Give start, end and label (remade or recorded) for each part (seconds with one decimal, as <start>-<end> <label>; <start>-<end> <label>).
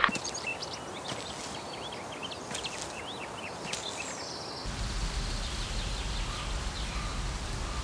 0.0-7.8 recorded